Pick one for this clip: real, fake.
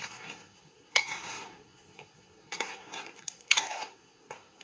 fake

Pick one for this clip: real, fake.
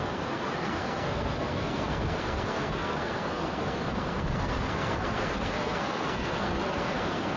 fake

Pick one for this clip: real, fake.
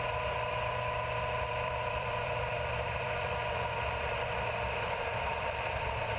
fake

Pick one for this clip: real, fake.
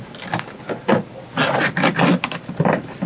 real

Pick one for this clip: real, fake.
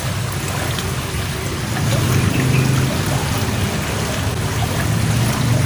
real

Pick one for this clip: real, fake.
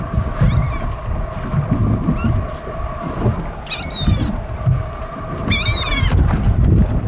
real